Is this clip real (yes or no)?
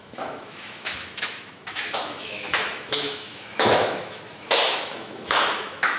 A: no